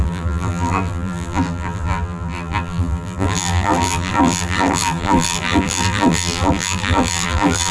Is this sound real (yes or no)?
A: no